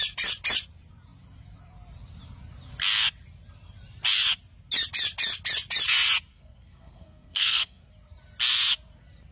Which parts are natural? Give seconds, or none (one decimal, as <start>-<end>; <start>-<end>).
0.0-6.3; 7.9-9.3